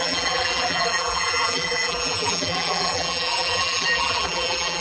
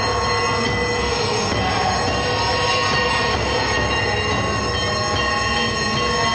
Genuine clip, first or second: second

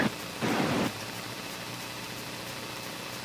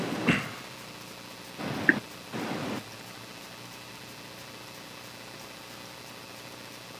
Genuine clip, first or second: second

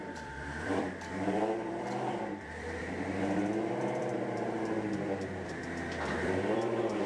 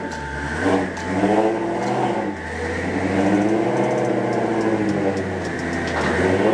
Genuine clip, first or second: second